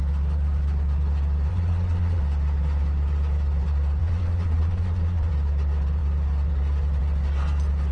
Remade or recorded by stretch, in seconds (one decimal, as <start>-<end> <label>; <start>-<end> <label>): 0.0-1.5 recorded; 1.5-2.2 remade; 2.2-4.0 recorded; 4.0-5.3 remade; 5.3-7.9 recorded